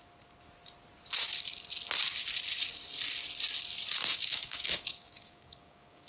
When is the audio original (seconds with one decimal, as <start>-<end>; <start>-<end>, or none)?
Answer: 0.0-4.0